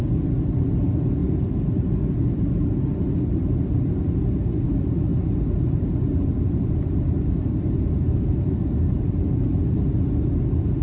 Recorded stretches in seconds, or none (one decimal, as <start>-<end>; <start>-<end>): 0.0-1.2; 4.1-5.1; 9.8-10.8